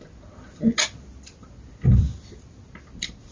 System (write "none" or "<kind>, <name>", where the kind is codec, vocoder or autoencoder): none